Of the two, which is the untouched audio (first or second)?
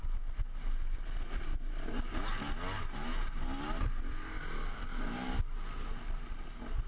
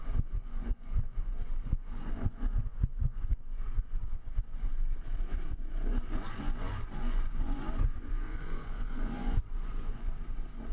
first